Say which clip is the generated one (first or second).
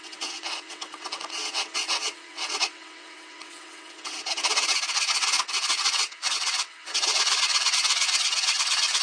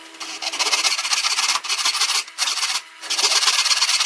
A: first